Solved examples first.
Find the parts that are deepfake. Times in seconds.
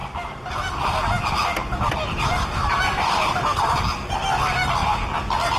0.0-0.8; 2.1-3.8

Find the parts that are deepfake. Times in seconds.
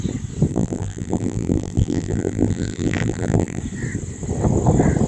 0.5-3.6